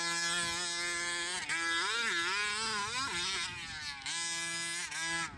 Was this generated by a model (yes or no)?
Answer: no